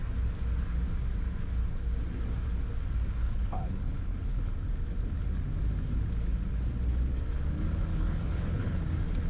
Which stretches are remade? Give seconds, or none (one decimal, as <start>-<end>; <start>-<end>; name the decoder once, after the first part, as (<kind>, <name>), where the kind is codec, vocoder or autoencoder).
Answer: 3.2-4.5 (codec, HILCodec); 7.9-8.8